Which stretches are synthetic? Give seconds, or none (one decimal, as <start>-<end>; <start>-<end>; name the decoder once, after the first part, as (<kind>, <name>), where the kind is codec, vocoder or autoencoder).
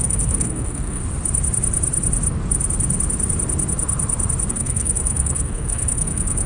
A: 0.0-1.0 (codec, SNAC); 4.5-6.5